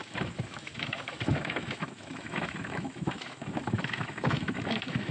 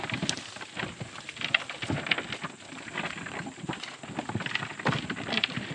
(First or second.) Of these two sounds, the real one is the second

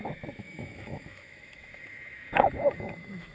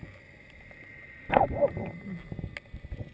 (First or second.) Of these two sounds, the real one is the second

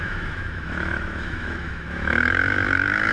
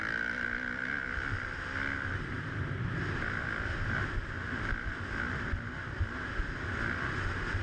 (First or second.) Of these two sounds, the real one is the second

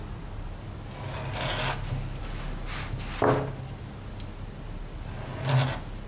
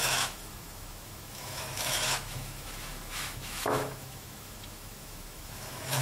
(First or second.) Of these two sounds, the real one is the first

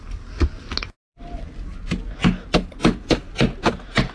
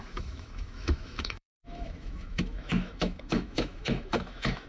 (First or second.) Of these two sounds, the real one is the first